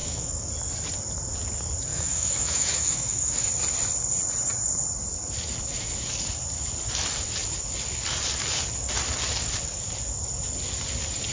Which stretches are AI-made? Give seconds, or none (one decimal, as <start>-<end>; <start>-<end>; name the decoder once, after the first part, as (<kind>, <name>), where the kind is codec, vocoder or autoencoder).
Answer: 0.0-0.5 (autoencoder, DAC-VAE); 1.9-3.5